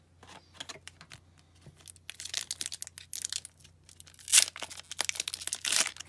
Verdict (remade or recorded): recorded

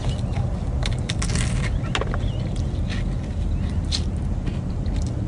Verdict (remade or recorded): recorded